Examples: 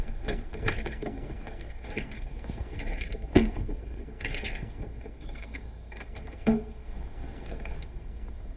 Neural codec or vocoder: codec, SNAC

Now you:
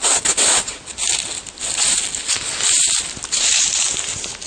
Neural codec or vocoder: none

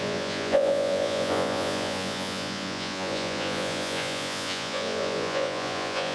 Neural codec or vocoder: vocoder, Vocos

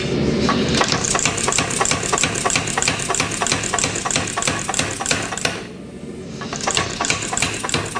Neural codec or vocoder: none